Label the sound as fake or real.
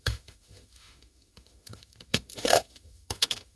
fake